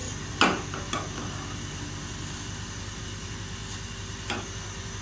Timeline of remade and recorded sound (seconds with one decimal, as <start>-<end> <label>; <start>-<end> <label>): 0.0-5.0 recorded